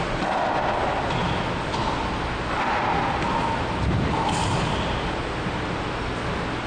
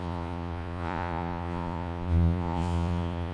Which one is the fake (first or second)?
second